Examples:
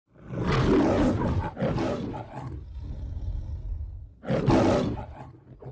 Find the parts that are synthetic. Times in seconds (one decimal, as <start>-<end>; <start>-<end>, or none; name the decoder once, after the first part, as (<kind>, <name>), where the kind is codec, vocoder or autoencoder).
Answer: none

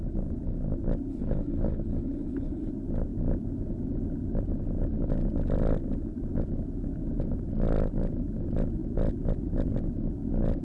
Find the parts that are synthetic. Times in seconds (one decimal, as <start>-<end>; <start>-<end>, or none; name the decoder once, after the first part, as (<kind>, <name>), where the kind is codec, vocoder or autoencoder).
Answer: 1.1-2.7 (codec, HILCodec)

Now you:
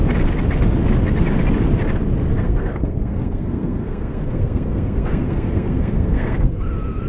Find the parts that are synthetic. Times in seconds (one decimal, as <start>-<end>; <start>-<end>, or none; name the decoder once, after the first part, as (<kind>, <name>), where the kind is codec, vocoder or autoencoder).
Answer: 2.3-6.6 (codec, SNAC)

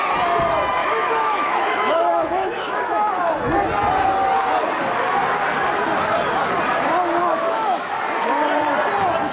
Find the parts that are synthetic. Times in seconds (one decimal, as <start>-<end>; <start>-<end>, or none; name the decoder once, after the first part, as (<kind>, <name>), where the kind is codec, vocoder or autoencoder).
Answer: 0.8-3.1 (autoencoder, DAC-VAE); 7.2-7.9

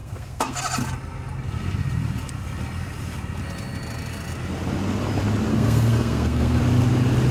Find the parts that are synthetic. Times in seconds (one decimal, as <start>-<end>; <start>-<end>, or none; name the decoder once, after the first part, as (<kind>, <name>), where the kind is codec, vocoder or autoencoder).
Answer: 0.0-0.6 (codec, SNAC); 5.5-6.6

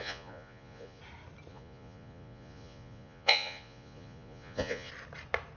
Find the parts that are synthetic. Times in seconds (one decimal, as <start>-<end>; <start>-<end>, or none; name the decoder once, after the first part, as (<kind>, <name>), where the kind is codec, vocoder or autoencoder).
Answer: 0.0-1.0 (vocoder, Vocos); 1.5-4.9